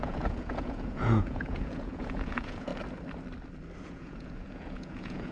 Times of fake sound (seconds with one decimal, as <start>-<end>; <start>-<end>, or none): 0.0-2.7; 3.8-5.3